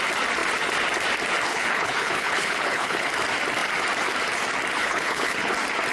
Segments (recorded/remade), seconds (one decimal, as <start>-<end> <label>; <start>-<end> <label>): 0.0-1.5 recorded; 1.5-3.1 remade; 3.1-4.8 recorded; 4.8-5.5 remade; 5.5-5.9 recorded